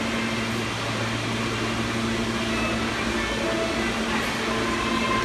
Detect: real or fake real